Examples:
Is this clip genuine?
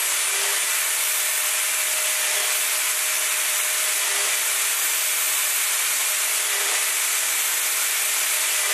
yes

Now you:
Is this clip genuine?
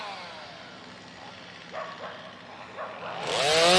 yes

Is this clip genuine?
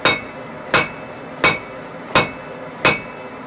yes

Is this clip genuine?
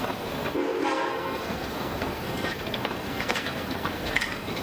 no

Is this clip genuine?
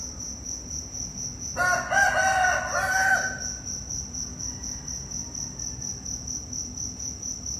yes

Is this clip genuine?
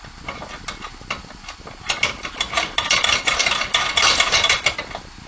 yes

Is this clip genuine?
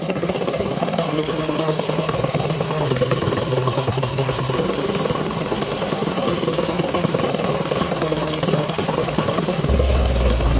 no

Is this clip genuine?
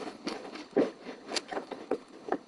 no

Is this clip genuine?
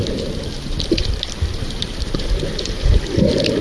no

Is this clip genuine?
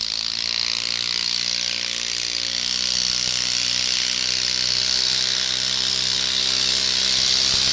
yes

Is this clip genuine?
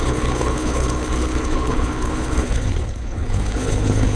no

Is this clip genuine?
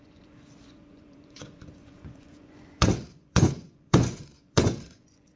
no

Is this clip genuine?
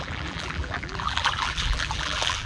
no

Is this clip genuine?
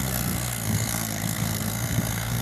no